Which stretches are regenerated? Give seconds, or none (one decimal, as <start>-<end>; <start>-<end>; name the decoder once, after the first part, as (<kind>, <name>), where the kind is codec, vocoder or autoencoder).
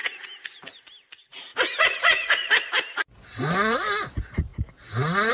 1.5-2.7 (vocoder, Vocos)